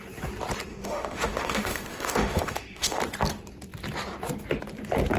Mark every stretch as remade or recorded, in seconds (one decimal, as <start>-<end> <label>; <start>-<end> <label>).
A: 0.0-0.7 recorded; 0.7-3.0 remade; 3.0-5.2 recorded